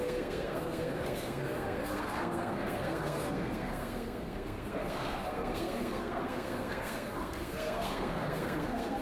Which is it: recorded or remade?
remade